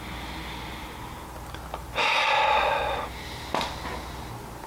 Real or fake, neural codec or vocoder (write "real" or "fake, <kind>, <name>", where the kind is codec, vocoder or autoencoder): real